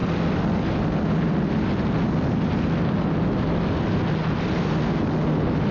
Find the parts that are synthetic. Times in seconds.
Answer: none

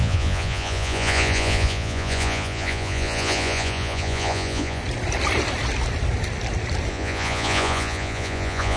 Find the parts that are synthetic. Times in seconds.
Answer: 0.0-4.8 (vocoder, Vocos); 6.9-8.8

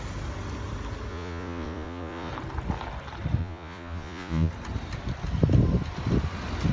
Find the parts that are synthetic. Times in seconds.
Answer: 1.1-2.3 (vocoder, Vocos); 3.4-4.5

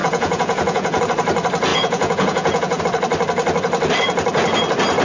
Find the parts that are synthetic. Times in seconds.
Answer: 0.0-1.0 (vocoder, Vocos); 1.7-2.8

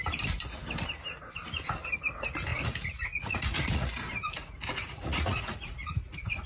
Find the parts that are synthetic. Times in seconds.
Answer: 2.5-6.5 (vocoder, Vocos)

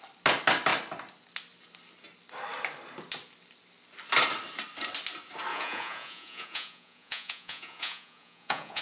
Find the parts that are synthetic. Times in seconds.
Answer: 5.5-8.8 (vocoder, Vocos)